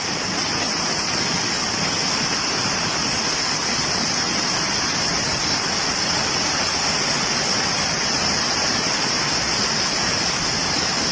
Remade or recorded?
recorded